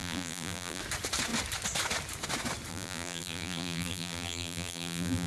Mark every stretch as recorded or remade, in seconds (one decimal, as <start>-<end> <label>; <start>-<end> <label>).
0.0-0.8 remade; 0.8-2.7 recorded; 2.7-5.3 remade